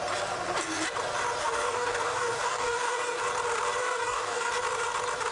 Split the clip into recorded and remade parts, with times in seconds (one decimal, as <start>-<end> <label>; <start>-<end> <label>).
0.0-1.4 recorded; 1.4-3.2 remade; 3.2-3.8 recorded; 3.8-4.5 remade; 4.5-5.3 recorded

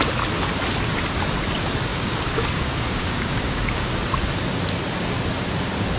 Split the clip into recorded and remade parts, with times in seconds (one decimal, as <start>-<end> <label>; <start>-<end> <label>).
0.0-1.9 recorded; 1.9-4.0 remade; 4.0-6.0 recorded